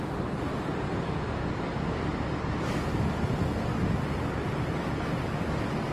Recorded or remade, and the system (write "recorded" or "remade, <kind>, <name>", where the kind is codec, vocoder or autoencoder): recorded